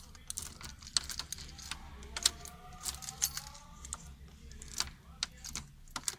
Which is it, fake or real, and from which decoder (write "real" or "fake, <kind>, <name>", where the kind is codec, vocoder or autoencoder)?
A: real